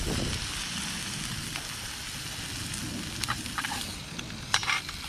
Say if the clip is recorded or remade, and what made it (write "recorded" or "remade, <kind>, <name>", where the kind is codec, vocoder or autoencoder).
recorded